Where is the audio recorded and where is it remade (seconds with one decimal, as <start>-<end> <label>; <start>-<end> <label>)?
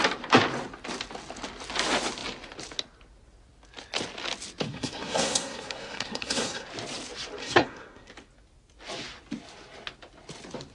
0.0-4.7 recorded; 4.7-6.7 remade; 6.7-7.4 recorded; 7.4-8.1 remade; 8.1-10.7 recorded